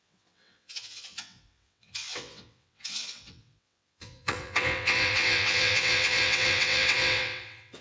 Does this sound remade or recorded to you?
remade